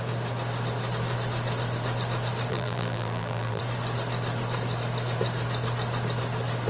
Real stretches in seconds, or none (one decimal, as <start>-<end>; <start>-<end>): 0.0-2.5; 3.6-6.7